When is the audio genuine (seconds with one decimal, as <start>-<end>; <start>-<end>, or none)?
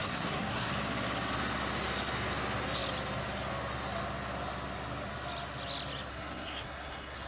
0.7-6.1